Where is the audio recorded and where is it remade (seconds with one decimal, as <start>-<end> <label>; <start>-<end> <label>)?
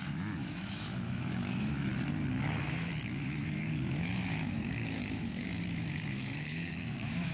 0.0-1.9 remade; 1.9-2.6 recorded; 2.6-7.3 remade